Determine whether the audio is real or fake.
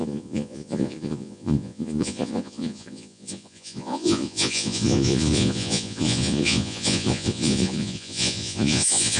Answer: fake